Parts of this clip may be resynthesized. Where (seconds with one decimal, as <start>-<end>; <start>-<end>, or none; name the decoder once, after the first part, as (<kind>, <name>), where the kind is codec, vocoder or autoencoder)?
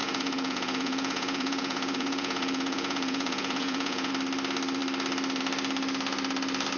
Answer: 0.0-4.1 (vocoder, Vocos)